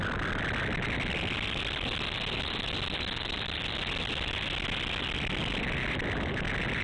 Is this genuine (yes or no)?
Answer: yes